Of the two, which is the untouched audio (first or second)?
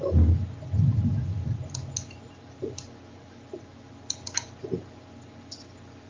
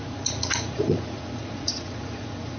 first